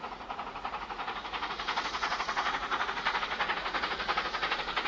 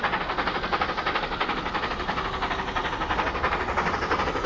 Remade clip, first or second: first